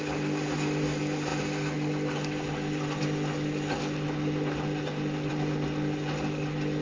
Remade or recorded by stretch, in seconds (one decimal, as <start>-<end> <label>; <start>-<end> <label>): 0.0-6.8 recorded